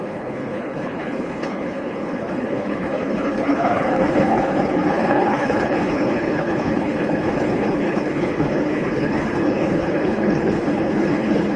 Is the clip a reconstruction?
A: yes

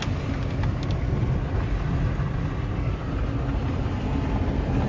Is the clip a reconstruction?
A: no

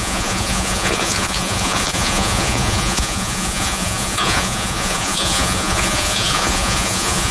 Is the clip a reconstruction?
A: yes